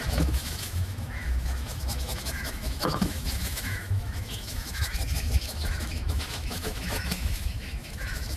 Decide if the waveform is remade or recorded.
remade